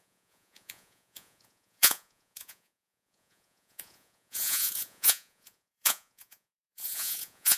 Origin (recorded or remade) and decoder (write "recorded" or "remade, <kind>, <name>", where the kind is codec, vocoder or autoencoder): remade, vocoder, Vocos